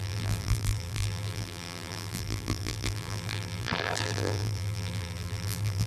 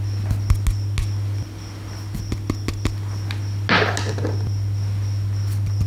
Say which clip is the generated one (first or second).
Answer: first